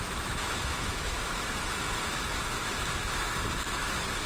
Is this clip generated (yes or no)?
yes